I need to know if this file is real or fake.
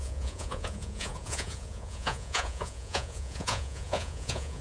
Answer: fake